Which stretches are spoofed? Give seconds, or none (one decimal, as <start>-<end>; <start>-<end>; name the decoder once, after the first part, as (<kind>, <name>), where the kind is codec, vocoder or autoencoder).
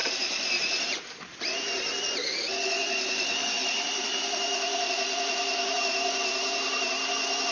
0.0-1.2 (vocoder, BigVGAN v2); 3.4-6.9